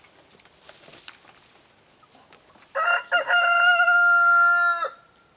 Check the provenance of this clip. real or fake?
real